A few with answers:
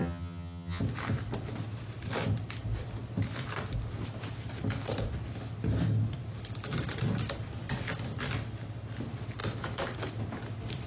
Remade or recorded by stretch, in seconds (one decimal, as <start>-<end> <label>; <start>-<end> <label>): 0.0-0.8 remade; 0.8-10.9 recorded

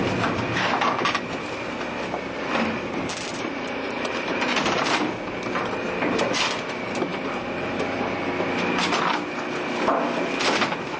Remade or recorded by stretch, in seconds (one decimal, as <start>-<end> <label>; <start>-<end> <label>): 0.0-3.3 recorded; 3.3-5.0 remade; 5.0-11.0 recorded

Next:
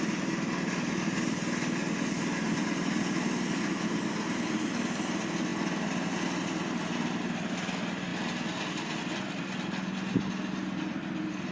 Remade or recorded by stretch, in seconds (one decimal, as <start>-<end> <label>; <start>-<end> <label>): 0.0-11.5 recorded

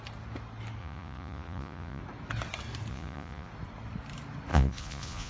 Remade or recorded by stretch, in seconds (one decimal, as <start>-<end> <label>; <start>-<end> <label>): 0.0-0.8 recorded; 0.8-2.0 remade; 2.0-2.9 recorded; 2.9-3.5 remade; 3.5-4.5 recorded; 4.5-5.3 remade